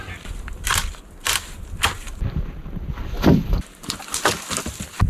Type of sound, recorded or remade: recorded